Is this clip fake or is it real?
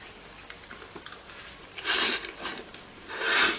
real